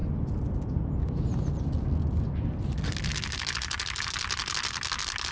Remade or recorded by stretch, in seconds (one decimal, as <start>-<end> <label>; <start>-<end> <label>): 0.0-5.3 recorded